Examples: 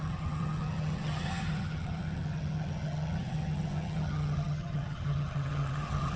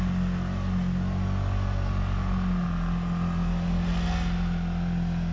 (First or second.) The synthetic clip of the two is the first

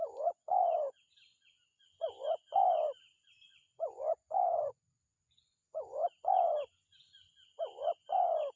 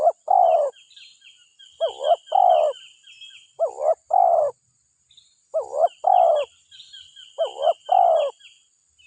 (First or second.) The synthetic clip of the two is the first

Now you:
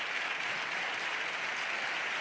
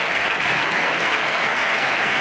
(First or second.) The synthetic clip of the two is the second